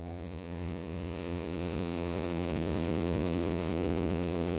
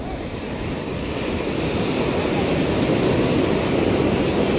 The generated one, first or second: first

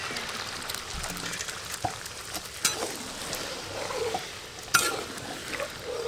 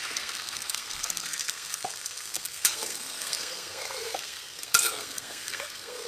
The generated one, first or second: second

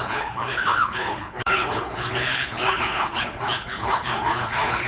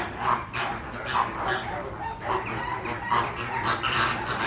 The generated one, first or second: first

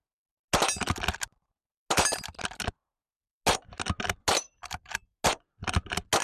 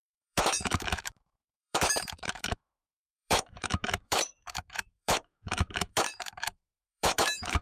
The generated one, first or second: second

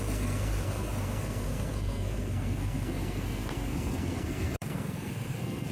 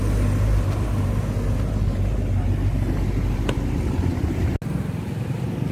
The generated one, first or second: first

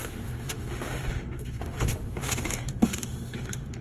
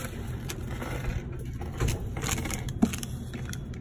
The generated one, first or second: first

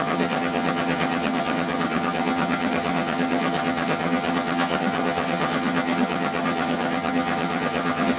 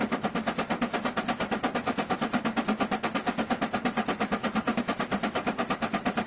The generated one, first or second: first